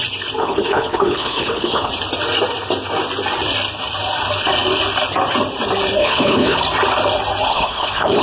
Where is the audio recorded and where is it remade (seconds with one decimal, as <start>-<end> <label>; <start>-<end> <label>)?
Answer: 0.0-0.4 recorded; 0.4-1.9 remade; 1.9-6.0 recorded; 6.0-6.6 remade; 6.6-7.5 recorded; 7.5-8.2 remade